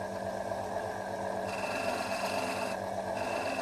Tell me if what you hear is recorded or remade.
recorded